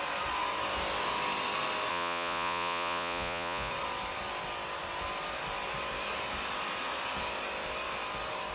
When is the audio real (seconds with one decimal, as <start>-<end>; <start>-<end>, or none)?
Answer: 0.0-1.9; 3.7-8.5